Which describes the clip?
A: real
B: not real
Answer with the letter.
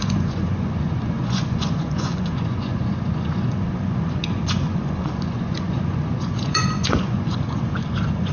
B